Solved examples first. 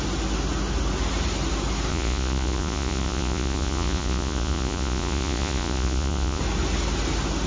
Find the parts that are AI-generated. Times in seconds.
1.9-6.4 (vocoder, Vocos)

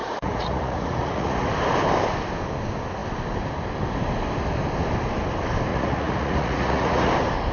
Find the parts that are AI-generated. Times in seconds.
0.0-1.5 (vocoder, Vocos); 5.7-7.1